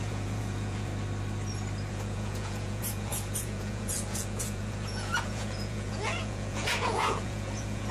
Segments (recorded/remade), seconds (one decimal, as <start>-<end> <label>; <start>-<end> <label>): 0.0-0.9 remade; 0.9-1.9 recorded; 1.9-7.9 remade